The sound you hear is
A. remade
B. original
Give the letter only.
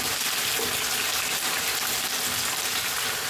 B